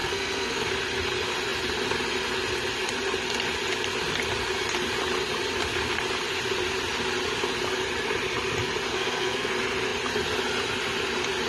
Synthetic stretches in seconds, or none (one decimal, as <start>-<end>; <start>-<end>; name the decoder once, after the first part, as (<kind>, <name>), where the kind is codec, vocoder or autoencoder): 0.0-0.7 (codec, SNAC); 8.9-9.5